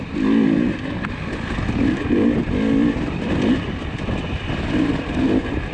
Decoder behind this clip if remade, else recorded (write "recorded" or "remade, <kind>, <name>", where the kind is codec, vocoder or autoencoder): recorded